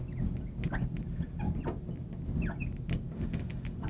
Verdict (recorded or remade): recorded